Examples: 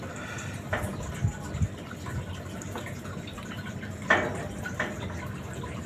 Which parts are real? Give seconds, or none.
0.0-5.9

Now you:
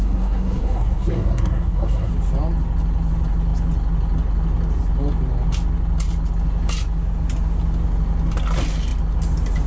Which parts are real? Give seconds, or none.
2.1-9.7

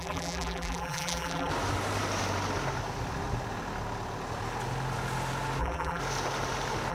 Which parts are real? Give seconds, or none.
1.5-5.6; 6.0-6.9

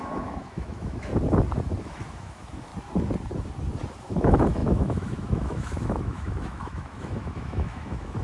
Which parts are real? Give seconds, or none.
1.1-1.8; 2.7-4.0

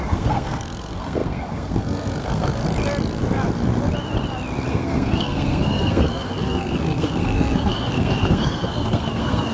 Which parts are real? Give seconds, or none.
2.6-4.7

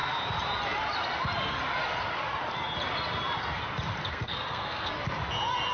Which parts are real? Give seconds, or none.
0.0-4.1; 4.9-5.7